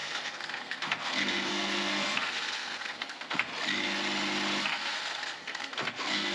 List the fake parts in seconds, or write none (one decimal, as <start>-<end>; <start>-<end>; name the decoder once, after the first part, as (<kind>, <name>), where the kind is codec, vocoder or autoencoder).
0.0-3.5 (codec, SNAC); 4.6-6.3